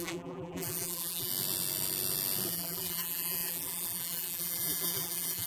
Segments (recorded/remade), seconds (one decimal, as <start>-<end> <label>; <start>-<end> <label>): 0.0-1.3 remade; 1.3-2.5 recorded; 2.5-5.5 remade